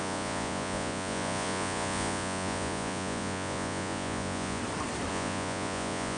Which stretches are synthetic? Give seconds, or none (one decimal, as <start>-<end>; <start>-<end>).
0.0-4.6; 5.1-6.2